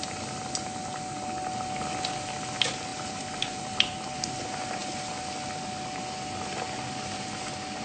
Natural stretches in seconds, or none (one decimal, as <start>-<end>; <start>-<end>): 0.0-2.9; 4.3-7.8